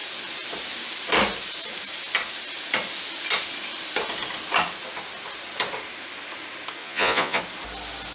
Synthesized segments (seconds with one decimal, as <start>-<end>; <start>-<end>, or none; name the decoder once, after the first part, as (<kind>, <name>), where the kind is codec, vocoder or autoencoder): 6.8-7.4 (vocoder, Vocos)